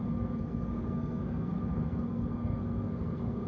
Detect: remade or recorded remade